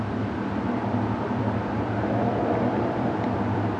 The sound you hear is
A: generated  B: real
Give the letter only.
A